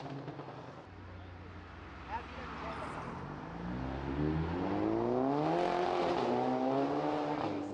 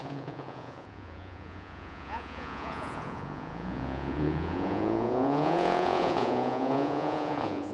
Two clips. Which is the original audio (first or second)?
first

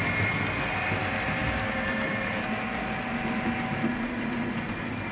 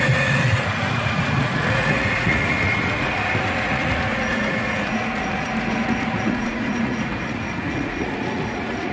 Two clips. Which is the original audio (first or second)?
first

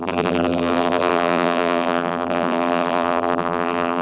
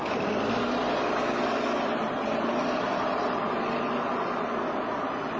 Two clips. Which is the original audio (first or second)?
second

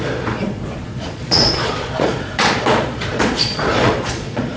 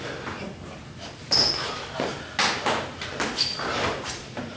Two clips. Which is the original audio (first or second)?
second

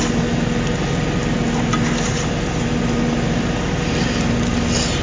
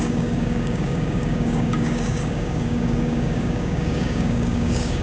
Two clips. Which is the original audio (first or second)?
first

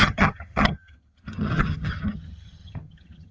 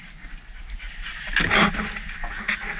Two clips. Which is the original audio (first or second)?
second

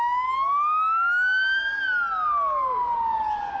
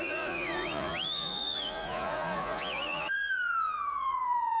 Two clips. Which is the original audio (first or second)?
first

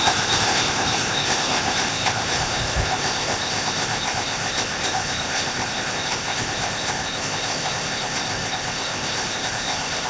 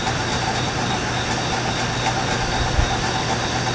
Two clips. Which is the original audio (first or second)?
second